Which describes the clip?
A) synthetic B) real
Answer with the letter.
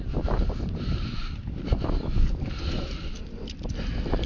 B